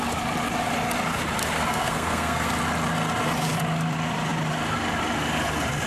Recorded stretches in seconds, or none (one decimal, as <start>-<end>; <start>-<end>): 0.0-1.7; 2.5-5.9